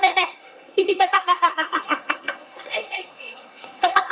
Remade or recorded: remade